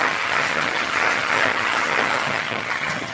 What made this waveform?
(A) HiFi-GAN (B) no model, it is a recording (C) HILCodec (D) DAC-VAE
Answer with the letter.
A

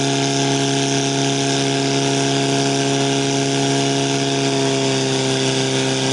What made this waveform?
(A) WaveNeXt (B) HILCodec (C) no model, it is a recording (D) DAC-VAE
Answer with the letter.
C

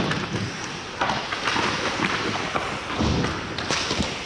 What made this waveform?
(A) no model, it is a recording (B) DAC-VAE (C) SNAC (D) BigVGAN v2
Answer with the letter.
A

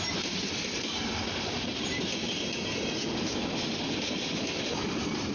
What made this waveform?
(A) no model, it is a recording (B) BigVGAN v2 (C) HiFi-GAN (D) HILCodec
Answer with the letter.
A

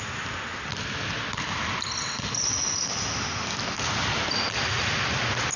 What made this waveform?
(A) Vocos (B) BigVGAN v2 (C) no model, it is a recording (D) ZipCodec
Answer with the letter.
C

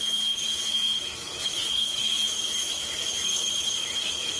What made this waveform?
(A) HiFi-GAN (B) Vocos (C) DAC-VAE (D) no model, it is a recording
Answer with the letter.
C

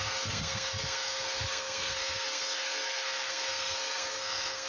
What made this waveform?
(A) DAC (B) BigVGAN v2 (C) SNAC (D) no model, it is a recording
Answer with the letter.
C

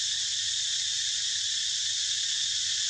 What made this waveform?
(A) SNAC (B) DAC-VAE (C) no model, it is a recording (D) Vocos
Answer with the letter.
C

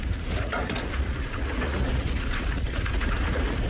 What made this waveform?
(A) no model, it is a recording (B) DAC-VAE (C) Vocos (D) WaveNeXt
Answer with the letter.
C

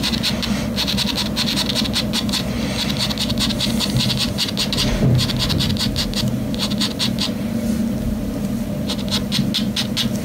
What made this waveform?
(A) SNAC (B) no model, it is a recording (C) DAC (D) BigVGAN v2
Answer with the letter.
B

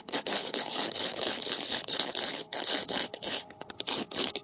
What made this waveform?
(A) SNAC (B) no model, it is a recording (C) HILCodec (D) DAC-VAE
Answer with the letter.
C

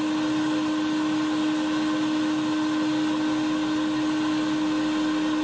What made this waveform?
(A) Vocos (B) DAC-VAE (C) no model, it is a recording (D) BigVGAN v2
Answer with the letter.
C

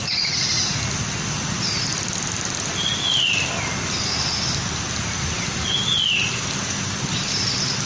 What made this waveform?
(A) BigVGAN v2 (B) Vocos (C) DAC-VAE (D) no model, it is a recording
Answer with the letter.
D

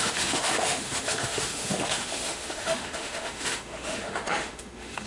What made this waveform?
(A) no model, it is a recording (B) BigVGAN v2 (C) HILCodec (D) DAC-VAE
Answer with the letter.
D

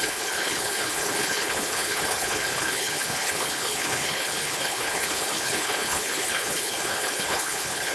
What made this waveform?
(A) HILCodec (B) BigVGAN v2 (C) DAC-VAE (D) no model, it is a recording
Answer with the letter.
A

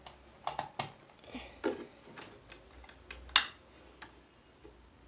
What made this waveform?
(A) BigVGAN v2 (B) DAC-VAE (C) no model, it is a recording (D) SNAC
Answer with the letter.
C